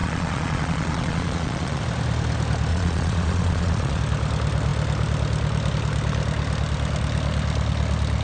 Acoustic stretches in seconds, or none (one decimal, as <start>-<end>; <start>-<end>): 1.8-2.7; 4.0-8.2